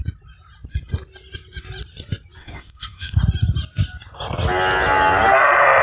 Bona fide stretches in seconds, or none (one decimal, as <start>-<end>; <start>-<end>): 0.0-2.4; 3.2-5.8